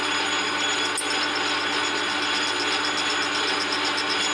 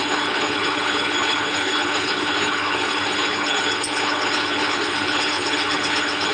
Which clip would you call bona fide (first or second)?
first